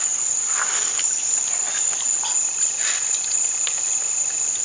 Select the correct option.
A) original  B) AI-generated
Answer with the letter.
A